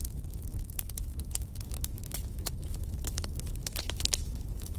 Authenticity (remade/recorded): remade